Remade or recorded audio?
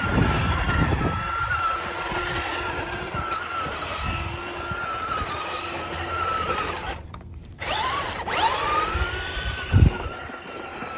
remade